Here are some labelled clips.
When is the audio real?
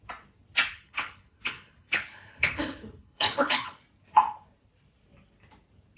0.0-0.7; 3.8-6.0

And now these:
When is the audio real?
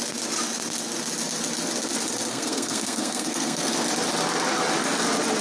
0.0-2.3; 3.7-5.4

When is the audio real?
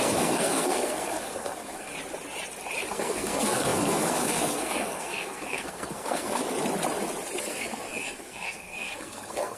1.9-2.9; 6.4-7.4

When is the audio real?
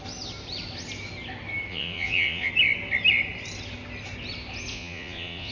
0.0-1.7; 2.5-4.7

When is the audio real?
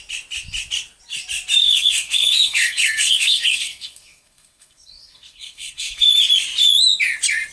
0.0-1.6; 6.1-7.5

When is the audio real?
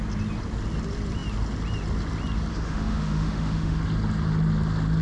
0.0-2.5; 3.8-5.0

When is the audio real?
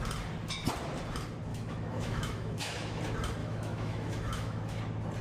0.0-1.5; 3.0-3.4; 4.8-5.2